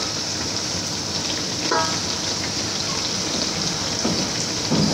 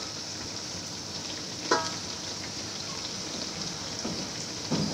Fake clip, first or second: second